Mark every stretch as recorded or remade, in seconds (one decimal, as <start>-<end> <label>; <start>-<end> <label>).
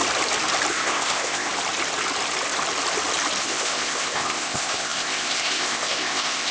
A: 0.0-0.7 recorded; 0.7-1.5 remade; 1.5-3.4 recorded; 3.4-6.5 remade